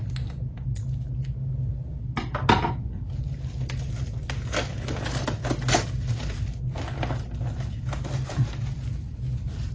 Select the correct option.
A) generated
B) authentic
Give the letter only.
B